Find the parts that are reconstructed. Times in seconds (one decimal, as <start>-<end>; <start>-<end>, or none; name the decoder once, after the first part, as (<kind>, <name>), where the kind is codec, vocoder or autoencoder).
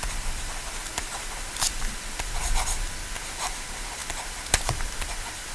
none